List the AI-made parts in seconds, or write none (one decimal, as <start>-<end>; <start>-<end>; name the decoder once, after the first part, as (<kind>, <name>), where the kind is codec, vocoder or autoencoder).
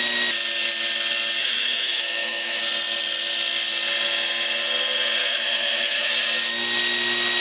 1.4-2.6 (autoencoder, DAC-VAE); 5.2-6.1